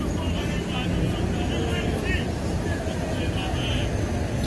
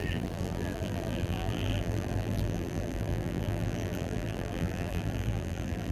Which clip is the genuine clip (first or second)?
first